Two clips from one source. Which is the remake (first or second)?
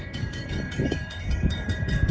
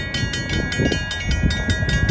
first